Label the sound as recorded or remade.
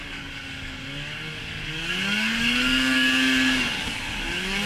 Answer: remade